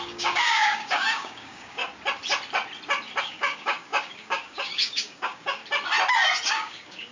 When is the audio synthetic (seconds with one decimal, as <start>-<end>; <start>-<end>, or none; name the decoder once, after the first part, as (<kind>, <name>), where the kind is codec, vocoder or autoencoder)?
0.0-1.8 (codec, DAC); 3.2-5.6; 6.5-7.1